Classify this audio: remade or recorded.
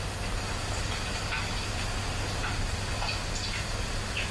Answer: recorded